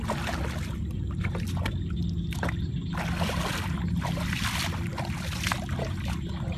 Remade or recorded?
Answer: recorded